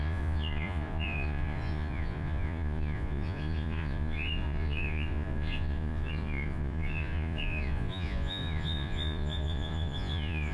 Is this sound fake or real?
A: fake